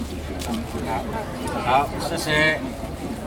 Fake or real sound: fake